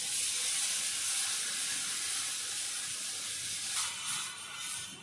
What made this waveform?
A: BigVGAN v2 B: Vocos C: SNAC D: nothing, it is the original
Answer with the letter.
D